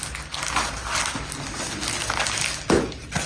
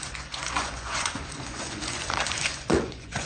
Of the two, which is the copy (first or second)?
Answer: second